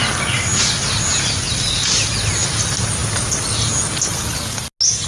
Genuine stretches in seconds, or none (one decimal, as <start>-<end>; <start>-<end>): 0.0-5.1